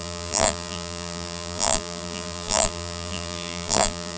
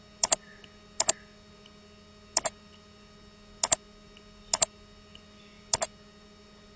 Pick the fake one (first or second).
first